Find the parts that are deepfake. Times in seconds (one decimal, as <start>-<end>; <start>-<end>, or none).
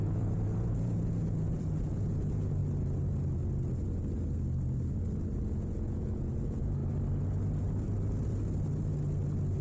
0.0-2.6; 5.5-6.8